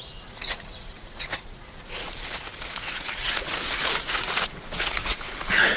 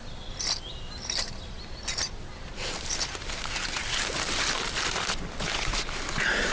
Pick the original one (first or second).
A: second